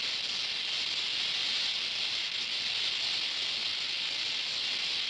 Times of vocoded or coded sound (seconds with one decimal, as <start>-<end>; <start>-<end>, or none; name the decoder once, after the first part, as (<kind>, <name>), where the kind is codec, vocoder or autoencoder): none